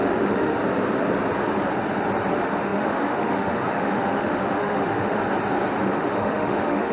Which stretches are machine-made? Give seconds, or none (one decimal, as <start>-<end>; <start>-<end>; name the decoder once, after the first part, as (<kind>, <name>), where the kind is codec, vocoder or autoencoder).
0.0-0.6 (autoencoder, DAC-VAE); 2.3-5.2; 5.8-6.9